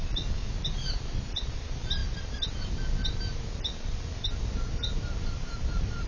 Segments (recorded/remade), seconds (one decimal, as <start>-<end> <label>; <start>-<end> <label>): 0.0-2.0 remade; 2.0-4.4 recorded; 4.4-6.1 remade